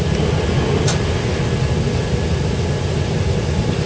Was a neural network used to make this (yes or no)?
no